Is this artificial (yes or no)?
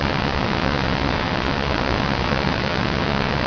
yes